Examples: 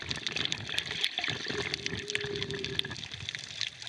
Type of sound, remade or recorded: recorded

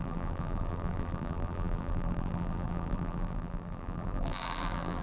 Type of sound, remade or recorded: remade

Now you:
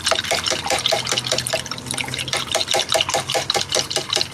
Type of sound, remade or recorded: recorded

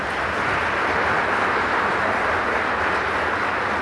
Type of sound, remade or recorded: recorded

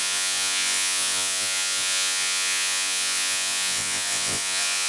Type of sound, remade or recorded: remade